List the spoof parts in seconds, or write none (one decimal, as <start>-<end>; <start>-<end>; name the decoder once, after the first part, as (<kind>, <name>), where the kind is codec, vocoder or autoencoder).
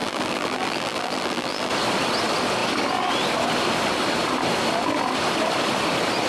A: 0.0-1.7 (vocoder, BigVGAN v2)